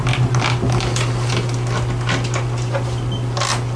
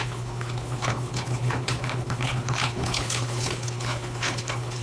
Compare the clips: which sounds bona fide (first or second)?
first